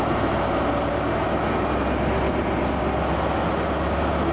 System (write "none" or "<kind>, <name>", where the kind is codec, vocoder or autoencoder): none